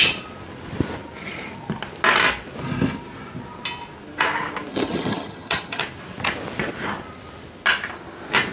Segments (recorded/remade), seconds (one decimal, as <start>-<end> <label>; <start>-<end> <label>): 0.0-4.7 recorded; 4.7-5.8 remade; 5.8-8.5 recorded

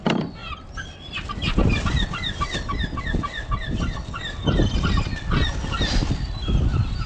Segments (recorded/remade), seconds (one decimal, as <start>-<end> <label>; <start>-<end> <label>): 0.0-7.1 recorded

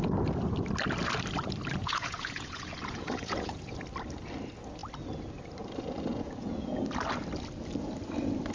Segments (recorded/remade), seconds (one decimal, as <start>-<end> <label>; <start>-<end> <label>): 0.0-1.8 recorded; 1.8-3.8 remade; 3.8-6.1 recorded; 6.1-6.7 remade; 6.7-8.5 recorded

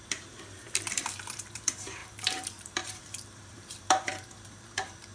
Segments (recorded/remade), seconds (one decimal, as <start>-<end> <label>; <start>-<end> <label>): 0.0-5.1 remade

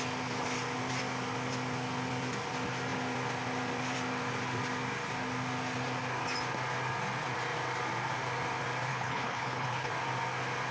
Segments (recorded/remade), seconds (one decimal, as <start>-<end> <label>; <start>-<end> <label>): 0.0-8.9 recorded; 8.9-9.9 remade; 9.9-10.7 recorded